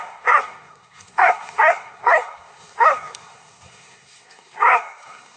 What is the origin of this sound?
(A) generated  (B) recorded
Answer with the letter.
A